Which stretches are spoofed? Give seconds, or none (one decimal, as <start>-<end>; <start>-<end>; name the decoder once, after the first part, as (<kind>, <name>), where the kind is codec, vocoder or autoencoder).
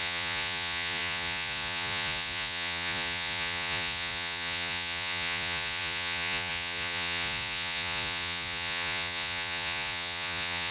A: 0.0-10.7 (vocoder, Vocos)